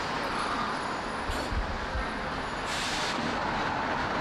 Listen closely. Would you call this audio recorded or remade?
recorded